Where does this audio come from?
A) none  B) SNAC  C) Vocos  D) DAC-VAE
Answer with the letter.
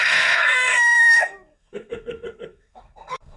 B